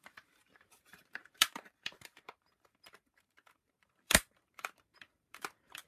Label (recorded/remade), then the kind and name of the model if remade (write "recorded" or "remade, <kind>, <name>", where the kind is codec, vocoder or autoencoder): remade, vocoder, BigVGAN v2